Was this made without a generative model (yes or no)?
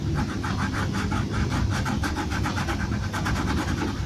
yes